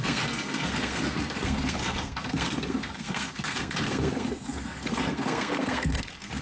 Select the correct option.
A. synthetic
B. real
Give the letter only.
A